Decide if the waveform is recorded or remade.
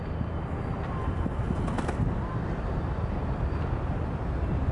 recorded